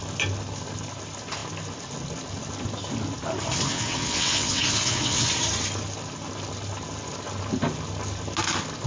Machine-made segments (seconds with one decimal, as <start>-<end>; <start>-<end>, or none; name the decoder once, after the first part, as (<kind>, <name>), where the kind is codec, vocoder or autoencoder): 3.7-5.3 (vocoder, WaveNeXt)